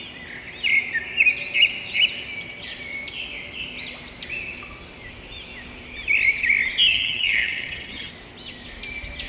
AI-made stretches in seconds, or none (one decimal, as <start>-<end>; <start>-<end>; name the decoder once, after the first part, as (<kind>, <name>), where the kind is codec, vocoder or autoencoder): 6.9-8.1 (vocoder, HiFi-GAN)